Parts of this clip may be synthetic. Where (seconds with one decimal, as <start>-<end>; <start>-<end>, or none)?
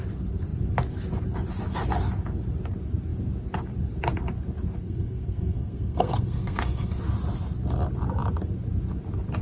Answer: 4.8-7.0